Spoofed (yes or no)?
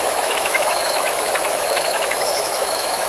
yes